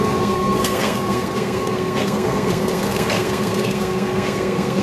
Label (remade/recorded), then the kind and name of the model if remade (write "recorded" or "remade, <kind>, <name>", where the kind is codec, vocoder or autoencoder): remade, codec, SNAC